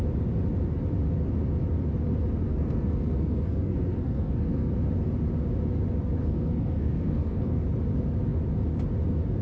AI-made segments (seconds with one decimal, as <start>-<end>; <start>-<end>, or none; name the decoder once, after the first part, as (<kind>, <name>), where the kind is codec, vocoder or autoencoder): 2.5-4.7 (codec, SNAC); 6.2-7.6